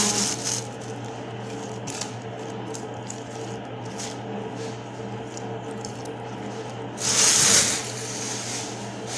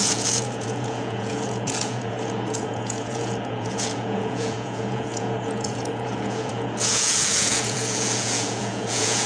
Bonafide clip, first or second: first